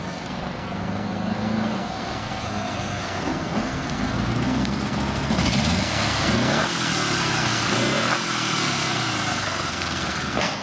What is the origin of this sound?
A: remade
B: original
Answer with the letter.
A